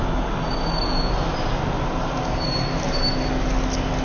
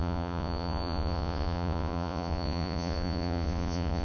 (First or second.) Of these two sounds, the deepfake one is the second